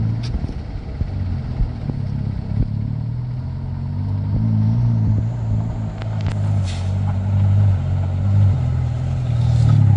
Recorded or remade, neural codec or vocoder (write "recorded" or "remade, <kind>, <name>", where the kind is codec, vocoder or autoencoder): recorded